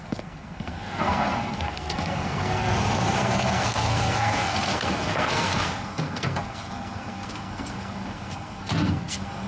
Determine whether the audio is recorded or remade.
remade